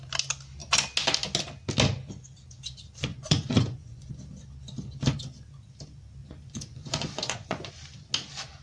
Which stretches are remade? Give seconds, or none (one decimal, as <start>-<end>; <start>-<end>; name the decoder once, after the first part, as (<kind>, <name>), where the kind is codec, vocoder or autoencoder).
3.1-4.1 (vocoder, Vocos); 6.2-7.7